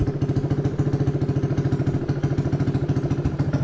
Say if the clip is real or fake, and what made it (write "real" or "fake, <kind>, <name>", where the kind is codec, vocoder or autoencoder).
real